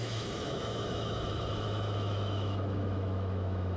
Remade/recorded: remade